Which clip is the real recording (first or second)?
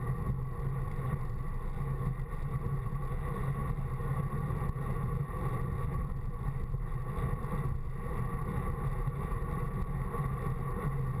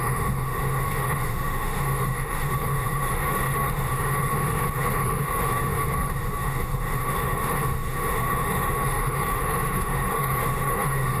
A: first